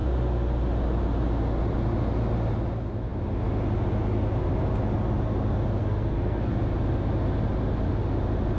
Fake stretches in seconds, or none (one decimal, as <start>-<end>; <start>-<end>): 5.8-6.5